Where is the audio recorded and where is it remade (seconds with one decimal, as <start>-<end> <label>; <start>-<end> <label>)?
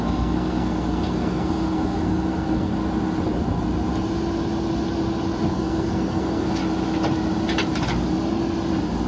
0.0-2.7 remade; 2.7-5.5 recorded; 5.5-6.6 remade; 6.6-9.1 recorded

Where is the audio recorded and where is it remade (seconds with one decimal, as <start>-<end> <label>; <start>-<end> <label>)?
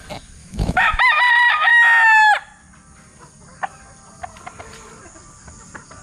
0.0-0.4 recorded; 0.4-1.2 remade; 1.2-6.0 recorded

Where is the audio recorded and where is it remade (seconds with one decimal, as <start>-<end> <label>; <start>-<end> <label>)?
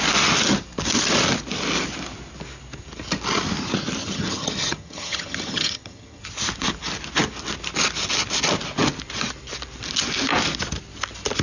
0.0-4.0 recorded; 4.0-6.2 remade; 6.2-11.4 recorded